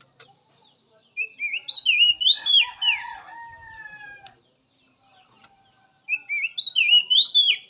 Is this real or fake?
real